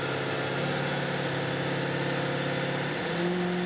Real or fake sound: real